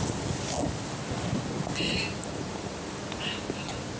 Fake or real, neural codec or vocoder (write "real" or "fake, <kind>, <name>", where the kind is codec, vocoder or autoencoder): real